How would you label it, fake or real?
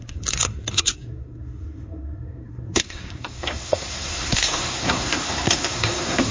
fake